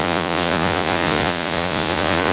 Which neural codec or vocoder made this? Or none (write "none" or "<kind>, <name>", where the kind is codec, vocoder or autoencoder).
vocoder, Vocos